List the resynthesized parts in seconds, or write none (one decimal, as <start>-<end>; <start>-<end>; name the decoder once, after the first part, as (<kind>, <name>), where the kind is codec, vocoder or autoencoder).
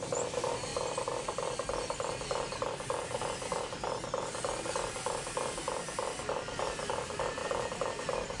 0.7-2.7 (vocoder, BigVGAN v2); 7.4-7.9